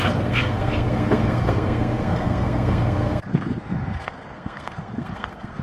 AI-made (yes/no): yes